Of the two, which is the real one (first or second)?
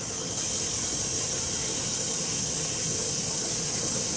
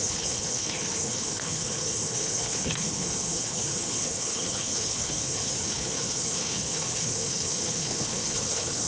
first